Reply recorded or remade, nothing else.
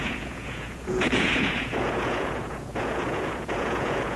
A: remade